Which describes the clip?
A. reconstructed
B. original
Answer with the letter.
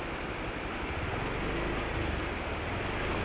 B